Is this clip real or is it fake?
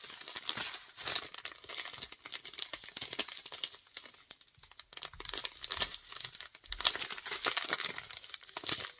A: real